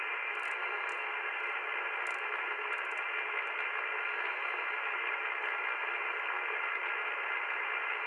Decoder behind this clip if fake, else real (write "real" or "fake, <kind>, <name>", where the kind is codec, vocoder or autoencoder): real